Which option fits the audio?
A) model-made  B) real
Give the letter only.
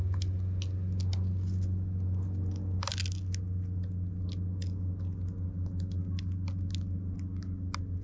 B